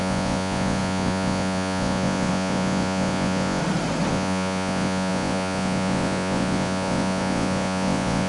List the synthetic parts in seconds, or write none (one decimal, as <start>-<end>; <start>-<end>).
0.0-3.6; 4.1-8.3